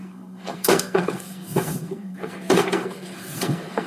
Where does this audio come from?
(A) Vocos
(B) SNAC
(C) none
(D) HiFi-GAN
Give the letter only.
B